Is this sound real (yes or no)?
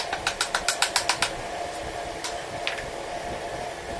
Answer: yes